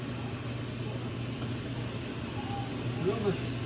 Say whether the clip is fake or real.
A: real